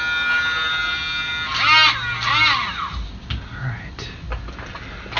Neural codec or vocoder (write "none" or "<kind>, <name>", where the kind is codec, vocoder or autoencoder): none